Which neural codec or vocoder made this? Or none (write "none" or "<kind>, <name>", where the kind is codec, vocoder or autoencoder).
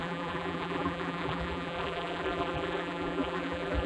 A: vocoder, BigVGAN v2